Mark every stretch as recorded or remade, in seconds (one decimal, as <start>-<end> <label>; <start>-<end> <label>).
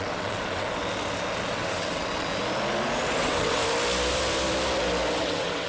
0.0-0.8 remade; 0.8-1.5 recorded; 1.5-2.3 remade; 2.3-3.2 recorded; 3.2-3.6 remade; 3.6-5.2 recorded; 5.2-5.7 remade